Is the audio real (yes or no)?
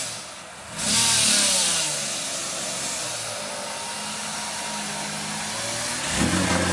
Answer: yes